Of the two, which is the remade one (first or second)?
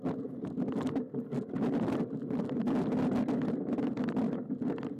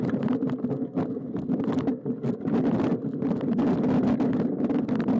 second